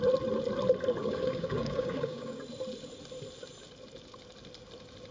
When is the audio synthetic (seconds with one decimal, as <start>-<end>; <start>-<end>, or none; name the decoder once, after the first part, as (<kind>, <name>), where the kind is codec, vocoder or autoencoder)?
1.0-2.4 (codec, DAC)